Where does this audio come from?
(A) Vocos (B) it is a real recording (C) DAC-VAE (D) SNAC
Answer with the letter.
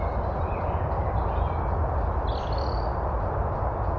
B